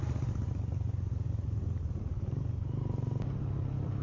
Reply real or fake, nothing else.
real